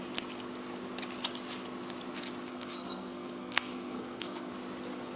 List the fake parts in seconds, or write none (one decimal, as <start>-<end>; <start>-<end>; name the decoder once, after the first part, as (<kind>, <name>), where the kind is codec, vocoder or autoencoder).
2.5-4.5 (codec, SNAC)